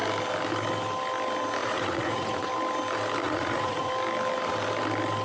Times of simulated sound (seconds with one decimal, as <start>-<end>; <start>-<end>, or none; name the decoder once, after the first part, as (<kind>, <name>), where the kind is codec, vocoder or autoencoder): 1.6-2.5 (vocoder, Vocos); 3.2-3.9